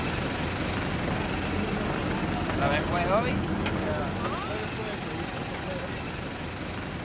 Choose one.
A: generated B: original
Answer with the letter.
B